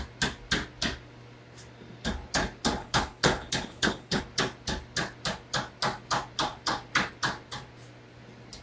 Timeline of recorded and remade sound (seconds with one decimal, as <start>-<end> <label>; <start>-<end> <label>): 0.0-2.8 recorded; 2.8-4.2 remade; 4.2-8.6 recorded